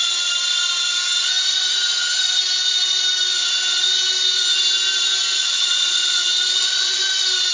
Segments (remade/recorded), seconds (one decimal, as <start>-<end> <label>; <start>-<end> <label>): 0.0-5.2 recorded; 5.2-7.1 remade; 7.1-7.5 recorded